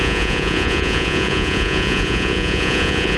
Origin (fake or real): fake